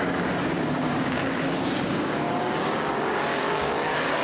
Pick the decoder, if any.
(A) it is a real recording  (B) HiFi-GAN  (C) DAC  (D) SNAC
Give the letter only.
C